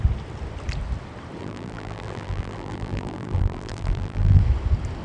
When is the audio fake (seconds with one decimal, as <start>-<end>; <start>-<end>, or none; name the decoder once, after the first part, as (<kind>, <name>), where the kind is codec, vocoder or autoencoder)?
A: 1.4-4.4 (vocoder, BigVGAN v2)